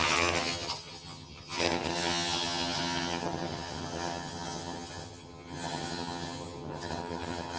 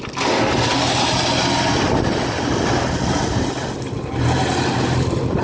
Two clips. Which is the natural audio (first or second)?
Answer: second